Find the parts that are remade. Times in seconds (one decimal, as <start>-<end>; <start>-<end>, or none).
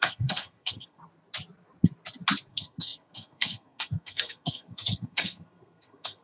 0.0-1.0; 2.5-6.2